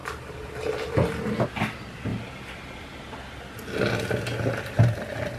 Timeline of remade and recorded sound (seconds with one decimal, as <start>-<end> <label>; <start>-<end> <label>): 0.0-5.4 recorded